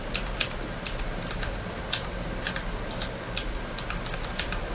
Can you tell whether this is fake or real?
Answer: real